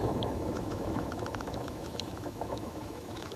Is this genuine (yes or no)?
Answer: no